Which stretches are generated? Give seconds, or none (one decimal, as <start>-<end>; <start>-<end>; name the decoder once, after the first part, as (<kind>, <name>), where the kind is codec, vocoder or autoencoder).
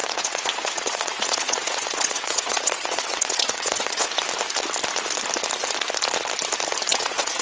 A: 0.0-4.1 (vocoder, WaveNeXt); 6.9-7.4